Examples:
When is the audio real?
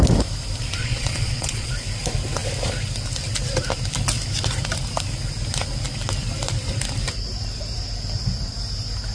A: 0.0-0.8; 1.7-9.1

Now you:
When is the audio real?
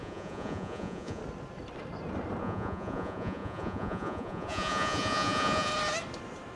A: 1.2-2.4; 5.7-6.6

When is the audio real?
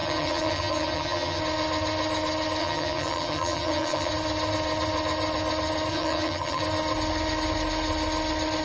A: 1.4-2.6; 4.1-5.9; 6.6-8.6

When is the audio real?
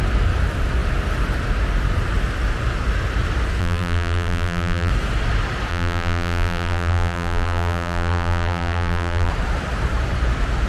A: 0.0-3.6; 4.9-5.7; 9.3-10.7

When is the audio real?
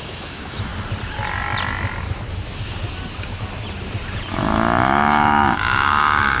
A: 0.7-4.3